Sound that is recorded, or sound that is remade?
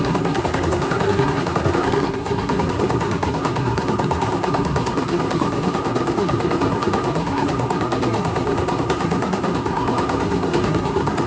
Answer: remade